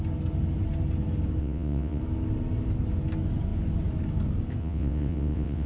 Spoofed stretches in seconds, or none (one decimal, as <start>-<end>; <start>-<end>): 1.4-2.0; 4.6-5.7

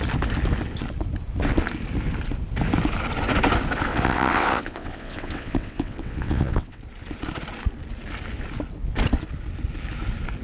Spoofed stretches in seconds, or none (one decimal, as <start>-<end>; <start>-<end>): 3.9-6.8

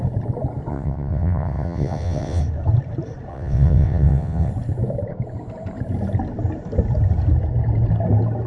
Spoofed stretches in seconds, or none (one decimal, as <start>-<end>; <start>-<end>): 0.7-2.4; 3.3-4.5

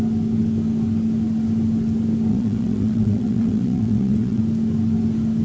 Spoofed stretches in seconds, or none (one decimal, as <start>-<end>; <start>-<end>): 2.3-4.4